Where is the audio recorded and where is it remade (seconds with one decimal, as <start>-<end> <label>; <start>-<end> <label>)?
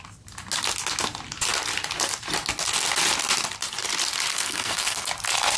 0.0-4.3 recorded; 4.3-5.1 remade; 5.1-5.6 recorded